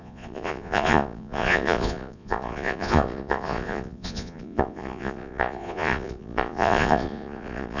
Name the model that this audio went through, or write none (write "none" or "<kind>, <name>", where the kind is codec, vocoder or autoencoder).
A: vocoder, Vocos